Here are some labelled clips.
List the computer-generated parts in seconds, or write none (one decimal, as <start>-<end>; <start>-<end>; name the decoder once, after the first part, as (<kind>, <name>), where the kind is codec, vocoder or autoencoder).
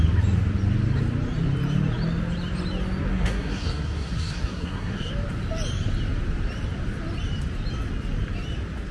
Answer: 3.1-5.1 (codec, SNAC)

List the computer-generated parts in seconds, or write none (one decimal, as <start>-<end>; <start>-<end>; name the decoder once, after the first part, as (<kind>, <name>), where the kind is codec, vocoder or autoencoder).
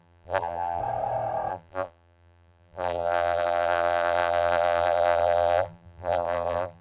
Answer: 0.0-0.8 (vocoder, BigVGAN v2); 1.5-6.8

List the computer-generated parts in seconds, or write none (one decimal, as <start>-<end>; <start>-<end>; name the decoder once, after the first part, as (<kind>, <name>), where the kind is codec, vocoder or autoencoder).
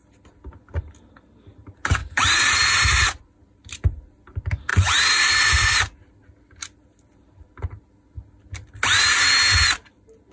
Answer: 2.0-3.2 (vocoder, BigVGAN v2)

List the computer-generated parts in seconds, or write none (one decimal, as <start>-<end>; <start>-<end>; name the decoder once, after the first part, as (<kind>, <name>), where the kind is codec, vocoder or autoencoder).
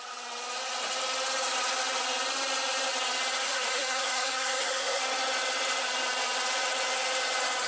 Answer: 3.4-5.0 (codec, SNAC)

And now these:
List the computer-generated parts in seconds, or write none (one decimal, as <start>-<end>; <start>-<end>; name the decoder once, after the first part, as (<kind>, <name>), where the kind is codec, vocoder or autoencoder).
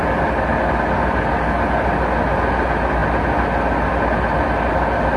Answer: none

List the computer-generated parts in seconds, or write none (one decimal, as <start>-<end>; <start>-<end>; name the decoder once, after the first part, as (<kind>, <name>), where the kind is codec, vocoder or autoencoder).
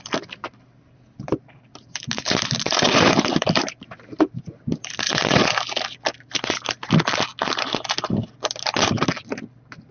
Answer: 0.4-4.5 (vocoder, BigVGAN v2)